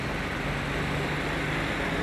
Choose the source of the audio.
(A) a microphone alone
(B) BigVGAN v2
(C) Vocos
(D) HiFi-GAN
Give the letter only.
A